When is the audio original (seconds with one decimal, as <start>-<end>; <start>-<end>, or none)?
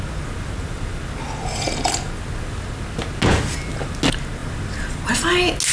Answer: 0.0-5.7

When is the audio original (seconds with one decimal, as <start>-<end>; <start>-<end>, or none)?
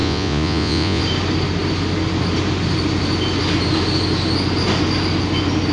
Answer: 1.0-5.7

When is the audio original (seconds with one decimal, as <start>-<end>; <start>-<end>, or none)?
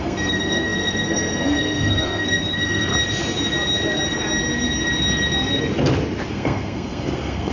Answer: 2.9-6.3